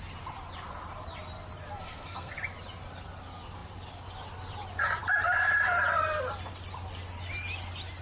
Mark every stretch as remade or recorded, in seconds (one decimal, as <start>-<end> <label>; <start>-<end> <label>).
0.0-1.8 recorded; 1.8-2.3 remade; 2.3-8.0 recorded